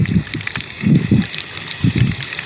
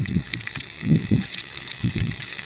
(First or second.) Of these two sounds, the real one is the first